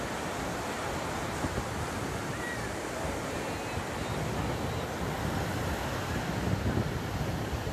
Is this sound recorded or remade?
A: recorded